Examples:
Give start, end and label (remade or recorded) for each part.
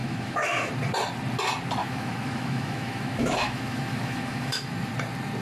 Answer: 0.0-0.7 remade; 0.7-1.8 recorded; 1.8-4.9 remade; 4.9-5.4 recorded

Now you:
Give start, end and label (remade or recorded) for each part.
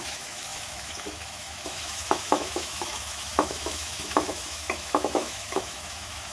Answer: 0.0-6.3 remade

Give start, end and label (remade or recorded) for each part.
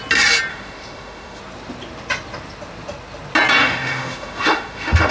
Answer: 0.0-0.5 recorded; 0.5-1.4 remade; 1.4-3.6 recorded; 3.6-5.1 remade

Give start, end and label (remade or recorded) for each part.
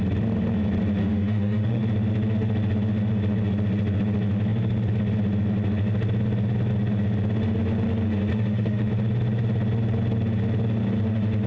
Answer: 0.0-1.0 recorded; 1.0-1.8 remade; 1.8-8.3 recorded; 8.3-8.9 remade; 8.9-11.5 recorded